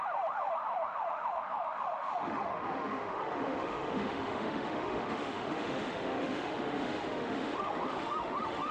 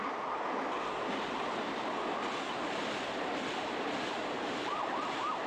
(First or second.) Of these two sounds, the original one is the second